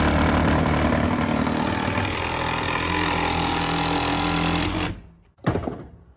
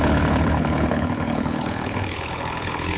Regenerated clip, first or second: second